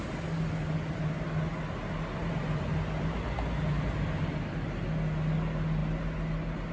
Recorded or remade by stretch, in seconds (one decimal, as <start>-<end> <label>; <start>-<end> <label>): 0.0-6.7 recorded